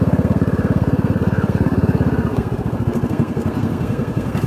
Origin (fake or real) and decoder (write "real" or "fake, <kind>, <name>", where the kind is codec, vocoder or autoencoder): fake, codec, SNAC